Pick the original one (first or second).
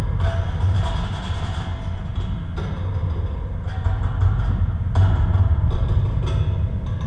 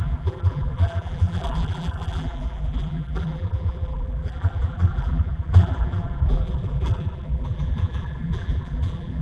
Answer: first